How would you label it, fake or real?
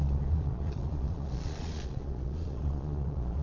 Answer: fake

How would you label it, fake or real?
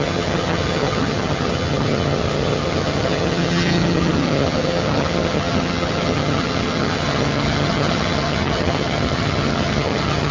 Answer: fake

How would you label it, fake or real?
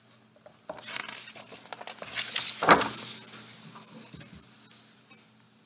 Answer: real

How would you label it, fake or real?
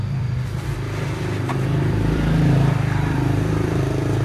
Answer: fake